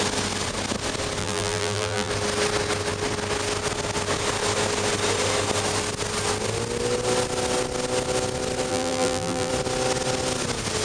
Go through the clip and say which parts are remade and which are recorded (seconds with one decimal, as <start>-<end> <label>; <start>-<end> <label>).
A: 0.0-1.2 recorded; 1.2-2.1 remade; 2.1-8.7 recorded; 8.7-9.5 remade; 9.5-10.8 recorded